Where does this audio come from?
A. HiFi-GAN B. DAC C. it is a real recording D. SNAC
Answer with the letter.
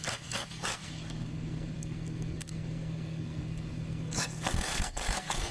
D